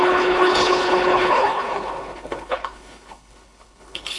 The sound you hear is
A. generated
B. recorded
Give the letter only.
A